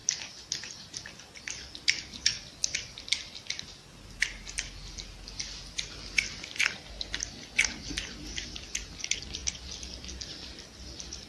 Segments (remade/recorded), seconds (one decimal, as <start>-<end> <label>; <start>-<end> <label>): 0.0-11.3 recorded